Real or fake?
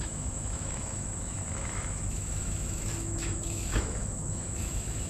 fake